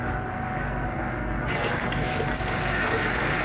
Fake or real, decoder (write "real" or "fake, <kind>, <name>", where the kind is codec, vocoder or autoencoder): fake, codec, SNAC